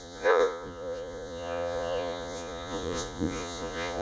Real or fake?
fake